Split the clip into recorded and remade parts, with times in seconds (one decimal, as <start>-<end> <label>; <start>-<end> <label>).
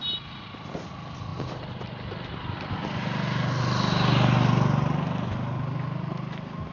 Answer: 0.0-6.7 recorded